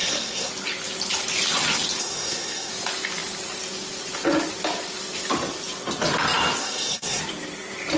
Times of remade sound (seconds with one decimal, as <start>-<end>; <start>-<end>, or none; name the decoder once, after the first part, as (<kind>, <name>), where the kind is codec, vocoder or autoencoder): 0.0-0.5 (codec, SNAC); 2.0-2.7; 6.6-7.2